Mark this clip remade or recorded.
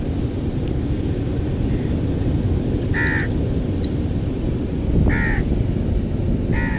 recorded